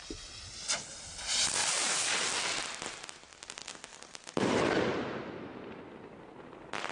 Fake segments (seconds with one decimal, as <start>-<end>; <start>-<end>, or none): none